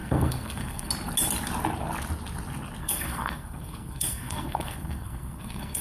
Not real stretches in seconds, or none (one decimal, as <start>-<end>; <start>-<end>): 0.0-0.9; 2.8-5.8